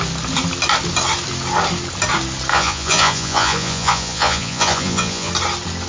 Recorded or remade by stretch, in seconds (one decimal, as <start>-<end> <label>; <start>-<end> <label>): 0.0-2.5 recorded; 2.5-5.3 remade; 5.3-5.9 recorded